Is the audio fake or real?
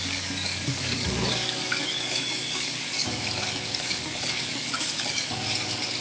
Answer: fake